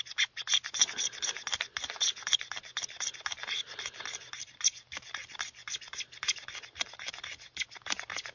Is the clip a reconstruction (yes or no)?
no